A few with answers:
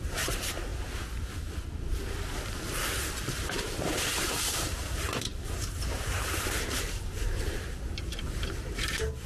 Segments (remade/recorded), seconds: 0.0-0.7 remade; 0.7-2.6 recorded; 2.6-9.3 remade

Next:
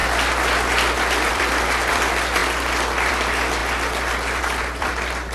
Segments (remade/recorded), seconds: 0.0-1.3 recorded; 1.3-2.4 remade; 2.4-3.1 recorded; 3.1-3.6 remade; 3.6-4.4 recorded; 4.4-5.3 remade